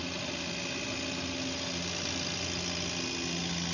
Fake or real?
real